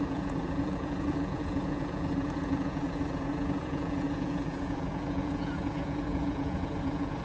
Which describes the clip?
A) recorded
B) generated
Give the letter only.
B